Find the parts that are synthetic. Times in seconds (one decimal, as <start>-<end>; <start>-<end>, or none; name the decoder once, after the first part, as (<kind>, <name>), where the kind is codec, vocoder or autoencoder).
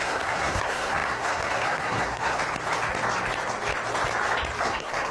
0.0-2.4 (codec, SNAC); 4.6-5.1